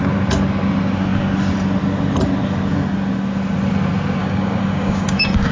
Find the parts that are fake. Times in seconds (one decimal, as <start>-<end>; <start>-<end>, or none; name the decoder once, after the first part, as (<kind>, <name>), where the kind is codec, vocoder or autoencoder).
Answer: 4.2-5.5 (codec, DAC)